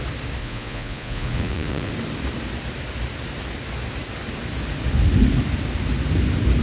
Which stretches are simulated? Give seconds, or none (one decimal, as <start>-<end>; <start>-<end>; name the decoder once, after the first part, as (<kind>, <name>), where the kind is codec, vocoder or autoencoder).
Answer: 0.4-1.9 (vocoder, Vocos)